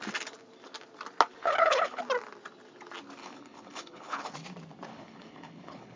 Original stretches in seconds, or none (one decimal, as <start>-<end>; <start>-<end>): 0.0-1.4; 2.0-3.2; 4.3-4.9